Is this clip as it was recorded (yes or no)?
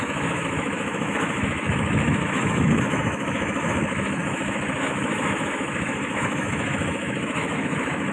no